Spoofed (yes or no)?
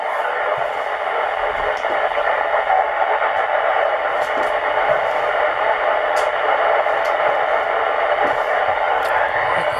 no